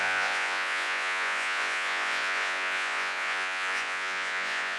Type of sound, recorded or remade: remade